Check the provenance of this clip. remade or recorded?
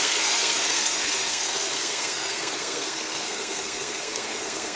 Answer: remade